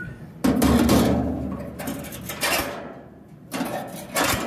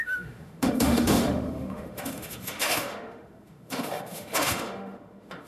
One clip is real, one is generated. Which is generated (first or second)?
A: second